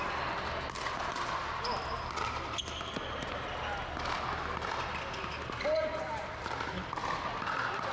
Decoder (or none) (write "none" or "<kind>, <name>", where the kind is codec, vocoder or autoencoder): none